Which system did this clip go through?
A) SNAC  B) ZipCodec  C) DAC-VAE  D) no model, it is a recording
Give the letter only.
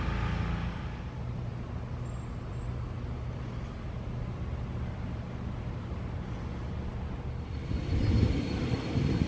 D